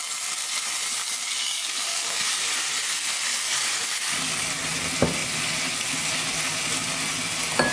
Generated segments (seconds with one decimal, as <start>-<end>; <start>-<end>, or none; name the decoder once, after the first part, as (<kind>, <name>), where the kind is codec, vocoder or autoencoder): 0.9-2.8 (codec, DAC); 3.3-4.5